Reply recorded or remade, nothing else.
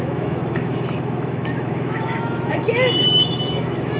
remade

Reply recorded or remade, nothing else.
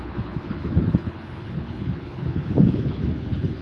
remade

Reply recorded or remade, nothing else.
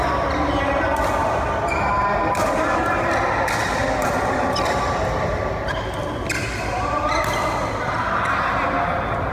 recorded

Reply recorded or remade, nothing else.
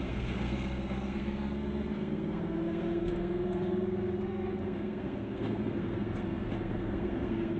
remade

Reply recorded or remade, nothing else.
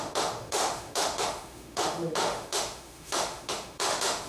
remade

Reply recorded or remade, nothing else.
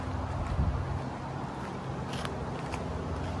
recorded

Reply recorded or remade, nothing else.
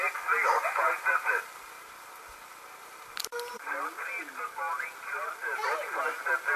recorded